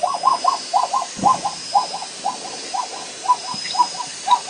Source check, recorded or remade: recorded